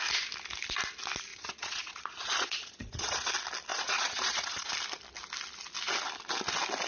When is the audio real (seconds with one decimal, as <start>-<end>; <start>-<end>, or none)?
0.0-1.3; 3.3-3.7; 4.7-6.9